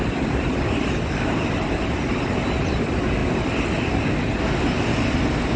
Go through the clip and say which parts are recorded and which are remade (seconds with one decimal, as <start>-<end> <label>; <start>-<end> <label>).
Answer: 0.0-5.6 recorded